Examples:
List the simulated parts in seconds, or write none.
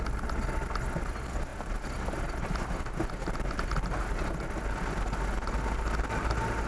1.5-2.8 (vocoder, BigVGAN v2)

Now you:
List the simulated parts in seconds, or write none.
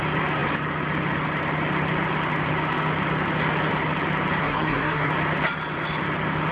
4.4-5.1 (codec, SNAC)